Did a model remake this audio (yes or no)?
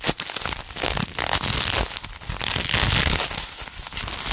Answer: no